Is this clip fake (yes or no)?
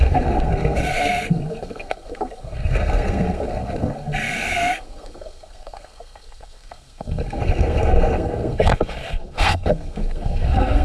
yes